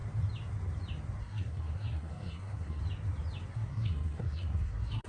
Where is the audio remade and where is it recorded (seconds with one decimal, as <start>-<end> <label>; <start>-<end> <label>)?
0.0-1.2 recorded; 1.2-2.8 remade; 2.8-3.5 recorded; 3.5-5.1 remade